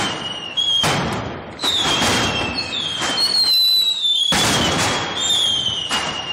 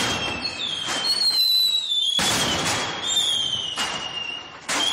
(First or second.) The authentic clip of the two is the first